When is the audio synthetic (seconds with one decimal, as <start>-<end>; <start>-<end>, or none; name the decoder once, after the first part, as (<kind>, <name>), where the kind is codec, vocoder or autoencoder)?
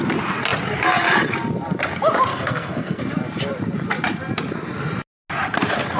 2.3-3.0 (codec, SNAC)